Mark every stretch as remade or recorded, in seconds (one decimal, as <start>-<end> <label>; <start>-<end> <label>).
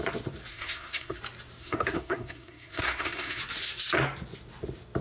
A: 0.0-0.5 recorded; 0.5-1.2 remade; 1.2-1.6 recorded; 1.6-3.4 remade; 3.4-5.0 recorded